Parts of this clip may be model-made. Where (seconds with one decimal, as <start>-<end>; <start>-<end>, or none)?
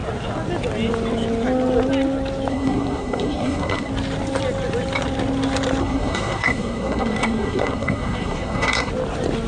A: 2.5-3.9; 5.8-8.9